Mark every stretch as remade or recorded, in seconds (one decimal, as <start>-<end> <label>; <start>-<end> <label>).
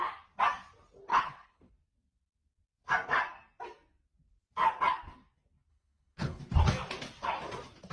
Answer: 0.0-1.1 recorded; 1.1-1.7 remade; 1.7-5.7 recorded; 5.7-6.4 remade; 6.4-7.9 recorded